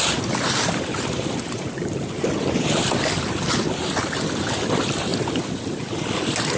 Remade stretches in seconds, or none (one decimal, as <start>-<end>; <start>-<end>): none